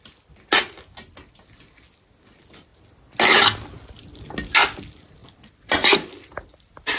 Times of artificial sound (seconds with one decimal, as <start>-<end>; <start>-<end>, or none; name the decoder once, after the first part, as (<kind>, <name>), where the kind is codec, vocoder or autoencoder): 5.2-7.0 (vocoder, BigVGAN v2)